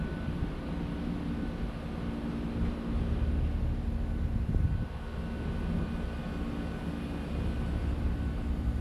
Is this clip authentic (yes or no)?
yes